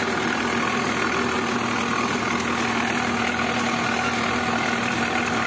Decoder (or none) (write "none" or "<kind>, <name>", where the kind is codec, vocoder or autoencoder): none